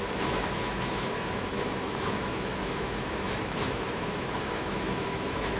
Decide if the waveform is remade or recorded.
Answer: remade